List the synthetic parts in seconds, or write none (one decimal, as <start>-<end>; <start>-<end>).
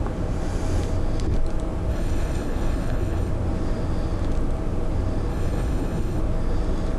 1.9-3.3; 5.3-6.2